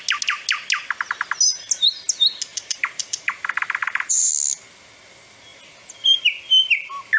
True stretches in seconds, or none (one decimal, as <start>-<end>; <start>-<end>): 0.0-2.5; 4.3-7.2